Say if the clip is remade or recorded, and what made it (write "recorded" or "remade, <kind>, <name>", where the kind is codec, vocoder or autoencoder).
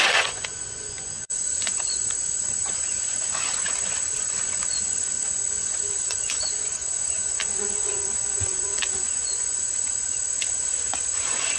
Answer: remade, vocoder, Vocos